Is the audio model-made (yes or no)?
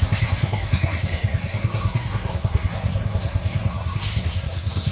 yes